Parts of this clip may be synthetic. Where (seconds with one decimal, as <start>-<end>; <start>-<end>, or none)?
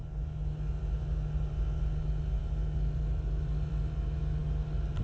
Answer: none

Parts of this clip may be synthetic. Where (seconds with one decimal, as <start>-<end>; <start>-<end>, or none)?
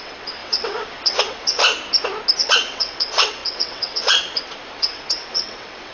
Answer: 0.0-1.6; 2.4-5.9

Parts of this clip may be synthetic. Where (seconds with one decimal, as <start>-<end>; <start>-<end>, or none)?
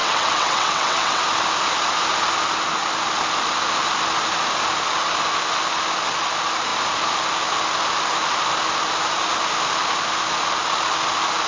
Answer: 0.0-1.2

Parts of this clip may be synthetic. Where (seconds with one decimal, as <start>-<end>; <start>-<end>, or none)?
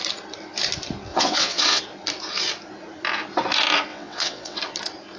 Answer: 1.1-1.8; 3.9-4.6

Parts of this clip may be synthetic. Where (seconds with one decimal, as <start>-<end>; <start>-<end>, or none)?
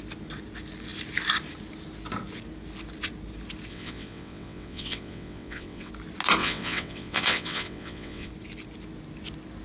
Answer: 3.7-5.9; 6.4-8.3